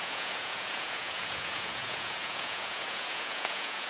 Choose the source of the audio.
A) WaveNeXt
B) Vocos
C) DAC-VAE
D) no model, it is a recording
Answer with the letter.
B